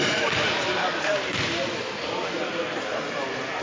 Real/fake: real